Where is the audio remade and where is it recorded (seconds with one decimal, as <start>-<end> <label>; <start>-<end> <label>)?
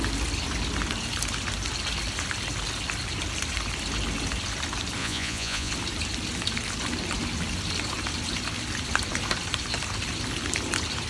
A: 0.0-5.0 recorded; 5.0-5.7 remade; 5.7-11.1 recorded